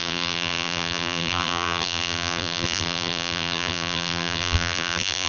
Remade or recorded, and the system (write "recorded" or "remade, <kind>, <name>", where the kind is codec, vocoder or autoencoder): remade, vocoder, BigVGAN v2